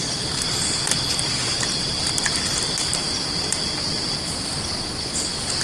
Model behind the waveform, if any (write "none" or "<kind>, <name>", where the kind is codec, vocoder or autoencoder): none